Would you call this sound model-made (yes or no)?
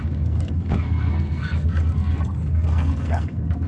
yes